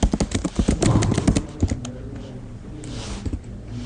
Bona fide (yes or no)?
yes